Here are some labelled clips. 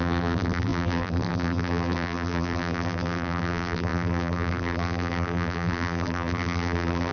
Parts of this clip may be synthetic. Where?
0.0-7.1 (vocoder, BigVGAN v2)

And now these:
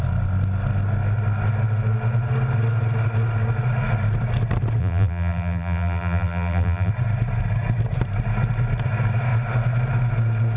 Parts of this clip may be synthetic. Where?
4.8-6.9 (vocoder, BigVGAN v2)